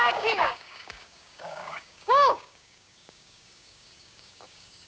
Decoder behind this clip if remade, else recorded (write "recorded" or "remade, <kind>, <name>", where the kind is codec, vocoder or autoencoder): remade, codec, DAC